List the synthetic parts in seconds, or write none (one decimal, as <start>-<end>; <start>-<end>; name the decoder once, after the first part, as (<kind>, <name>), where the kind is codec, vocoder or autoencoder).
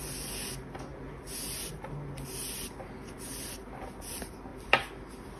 none